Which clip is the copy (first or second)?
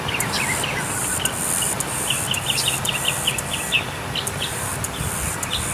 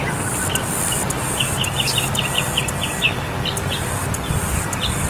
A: first